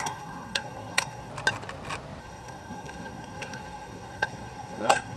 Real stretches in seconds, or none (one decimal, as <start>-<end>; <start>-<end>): 1.3-2.2

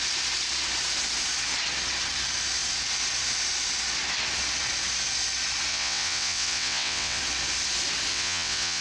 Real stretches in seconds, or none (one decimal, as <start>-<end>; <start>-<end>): 0.0-5.7; 7.2-8.1

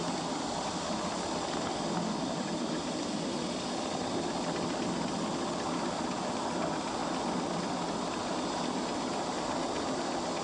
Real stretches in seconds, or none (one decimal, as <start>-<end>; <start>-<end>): 0.0-10.4

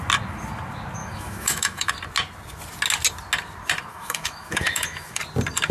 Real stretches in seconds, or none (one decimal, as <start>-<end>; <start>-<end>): 0.0-1.0; 1.9-3.9; 5.2-5.7

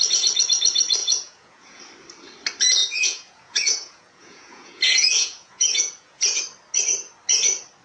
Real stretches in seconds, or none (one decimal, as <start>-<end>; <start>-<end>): 0.0-1.0; 1.8-2.8; 6.4-7.8